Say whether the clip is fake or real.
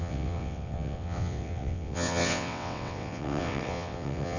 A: fake